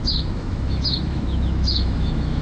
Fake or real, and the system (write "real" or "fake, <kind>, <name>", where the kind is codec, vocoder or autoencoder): fake, autoencoder, DAC-VAE